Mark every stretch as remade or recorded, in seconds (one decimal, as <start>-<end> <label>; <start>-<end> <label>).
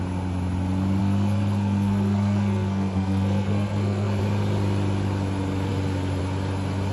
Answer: 0.0-1.0 recorded; 1.0-4.2 remade; 4.2-6.9 recorded